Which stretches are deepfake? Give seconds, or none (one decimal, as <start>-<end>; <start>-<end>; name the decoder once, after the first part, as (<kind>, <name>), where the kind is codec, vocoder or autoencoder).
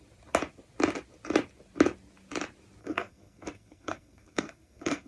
2.8-5.1 (codec, SNAC)